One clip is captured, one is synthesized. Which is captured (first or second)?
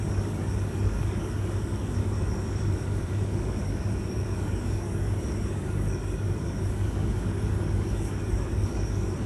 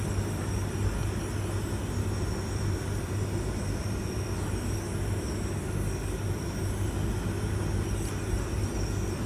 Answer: second